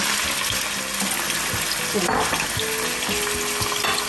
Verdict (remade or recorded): recorded